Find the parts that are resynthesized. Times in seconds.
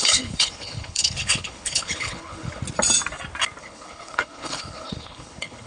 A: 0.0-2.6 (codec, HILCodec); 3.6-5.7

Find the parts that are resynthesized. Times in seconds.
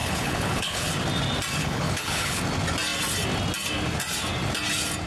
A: 0.0-0.9 (codec, HILCodec); 1.6-2.4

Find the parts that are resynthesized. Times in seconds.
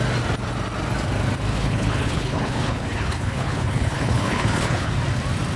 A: 1.5-4.9 (codec, HILCodec)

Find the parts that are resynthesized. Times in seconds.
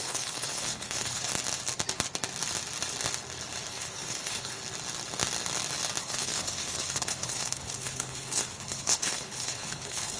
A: 0.0-1.3 (codec, HILCodec); 3.7-4.6; 6.0-10.2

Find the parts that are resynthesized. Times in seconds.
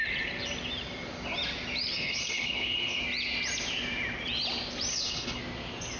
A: 1.9-3.0 (codec, HILCodec); 4.9-5.4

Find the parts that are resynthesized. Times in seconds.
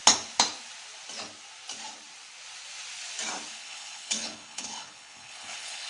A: 3.5-5.9 (codec, HILCodec)